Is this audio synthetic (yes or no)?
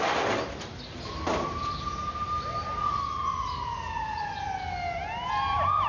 no